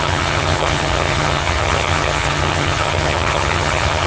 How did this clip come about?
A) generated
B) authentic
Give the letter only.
A